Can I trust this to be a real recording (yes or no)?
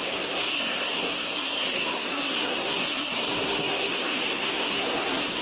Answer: no